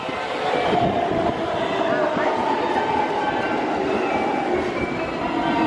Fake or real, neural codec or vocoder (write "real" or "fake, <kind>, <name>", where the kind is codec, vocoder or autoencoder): real